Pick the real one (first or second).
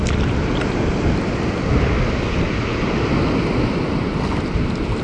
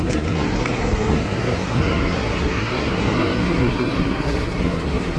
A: first